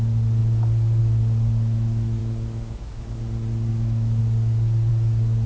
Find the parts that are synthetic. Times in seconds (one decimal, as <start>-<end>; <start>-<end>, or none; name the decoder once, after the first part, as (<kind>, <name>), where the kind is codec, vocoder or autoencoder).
2.2-3.2 (autoencoder, DAC-VAE); 3.7-4.2

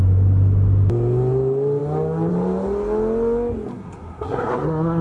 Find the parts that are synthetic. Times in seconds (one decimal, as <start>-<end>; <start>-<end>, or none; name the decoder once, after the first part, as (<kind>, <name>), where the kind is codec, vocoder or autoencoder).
3.7-5.0 (codec, SNAC)

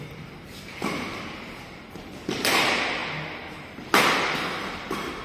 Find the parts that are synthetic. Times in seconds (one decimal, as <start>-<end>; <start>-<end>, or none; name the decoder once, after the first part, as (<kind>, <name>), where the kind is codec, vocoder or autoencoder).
none